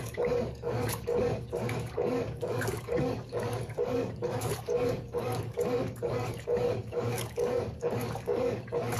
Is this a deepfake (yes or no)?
yes